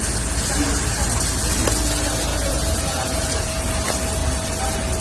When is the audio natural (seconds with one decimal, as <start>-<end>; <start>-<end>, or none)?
0.0-2.3; 3.5-5.0